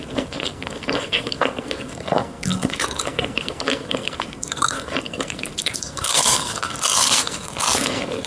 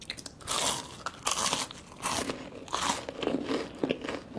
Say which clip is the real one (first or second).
second